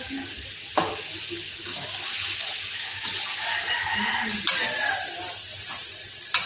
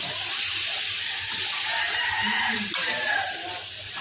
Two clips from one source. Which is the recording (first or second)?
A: first